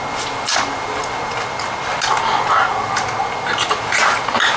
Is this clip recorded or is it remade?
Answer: recorded